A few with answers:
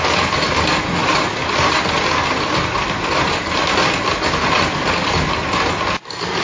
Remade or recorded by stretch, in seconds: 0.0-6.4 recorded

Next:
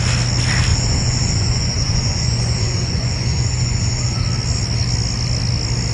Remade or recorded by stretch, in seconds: 0.0-0.7 recorded; 0.7-4.2 remade; 4.2-5.9 recorded

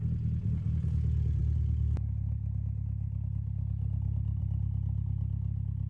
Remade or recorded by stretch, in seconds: 0.0-5.9 recorded

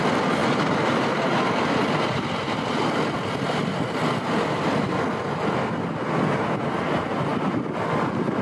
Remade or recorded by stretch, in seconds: 0.0-8.4 recorded

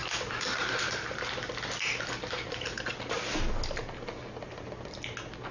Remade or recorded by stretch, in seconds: 0.0-5.5 recorded

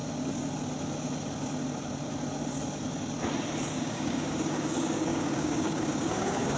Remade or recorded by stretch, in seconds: 0.0-3.7 recorded; 3.7-6.6 remade